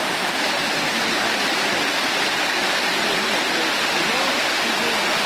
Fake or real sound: real